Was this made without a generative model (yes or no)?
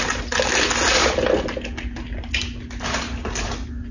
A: yes